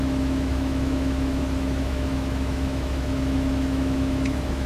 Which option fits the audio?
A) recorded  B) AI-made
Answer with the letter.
B